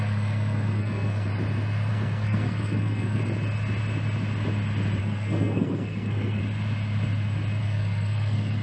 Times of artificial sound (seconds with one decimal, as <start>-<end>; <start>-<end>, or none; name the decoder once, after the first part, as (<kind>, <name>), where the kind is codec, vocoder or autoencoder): 0.0-1.3 (codec, SNAC); 1.9-3.2; 5.0-6.4; 7.6-8.6